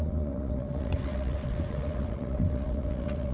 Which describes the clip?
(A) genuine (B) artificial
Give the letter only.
B